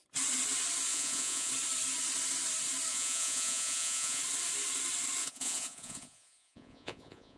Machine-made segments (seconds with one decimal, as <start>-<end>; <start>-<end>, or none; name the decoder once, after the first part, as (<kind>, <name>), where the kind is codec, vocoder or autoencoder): 0.9-1.5 (vocoder, Vocos); 2.9-4.2; 5.2-7.4